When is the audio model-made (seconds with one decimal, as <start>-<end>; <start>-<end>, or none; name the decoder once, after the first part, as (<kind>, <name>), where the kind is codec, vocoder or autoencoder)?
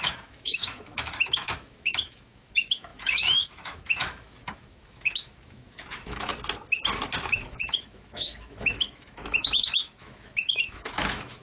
0.0-6.3 (autoencoder, DAC-VAE); 7.2-11.4